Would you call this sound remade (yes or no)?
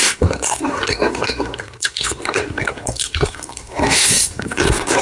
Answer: yes